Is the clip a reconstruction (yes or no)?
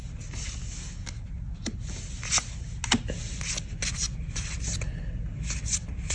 no